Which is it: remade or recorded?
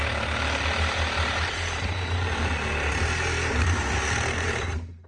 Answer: recorded